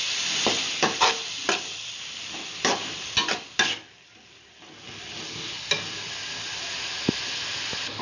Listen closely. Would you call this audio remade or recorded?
recorded